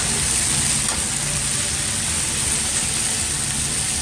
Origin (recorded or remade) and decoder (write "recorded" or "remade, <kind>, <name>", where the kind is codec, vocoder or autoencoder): recorded